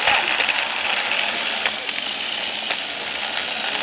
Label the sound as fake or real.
real